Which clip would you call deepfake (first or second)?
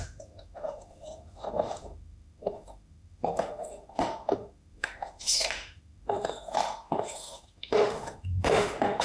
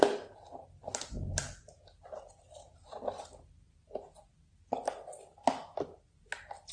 first